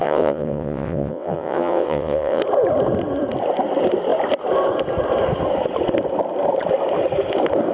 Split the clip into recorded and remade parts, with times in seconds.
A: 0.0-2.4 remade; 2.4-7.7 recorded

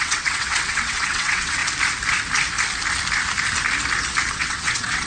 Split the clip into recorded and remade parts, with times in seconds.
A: 0.0-1.6 remade; 1.6-4.3 recorded; 4.3-5.1 remade

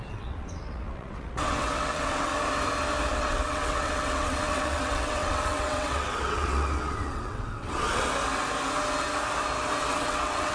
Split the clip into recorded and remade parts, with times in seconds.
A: 0.0-2.3 remade; 2.3-3.1 recorded; 3.1-8.1 remade; 8.1-9.9 recorded; 9.9-10.5 remade

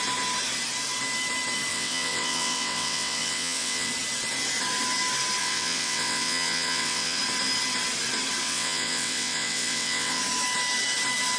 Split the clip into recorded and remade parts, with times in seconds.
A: 0.0-1.7 recorded; 1.7-3.9 remade; 3.9-5.4 recorded; 5.4-7.2 remade; 7.2-8.4 recorded; 8.4-10.2 remade; 10.2-11.4 recorded

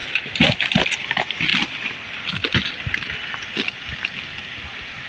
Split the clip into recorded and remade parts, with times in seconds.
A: 0.0-5.1 recorded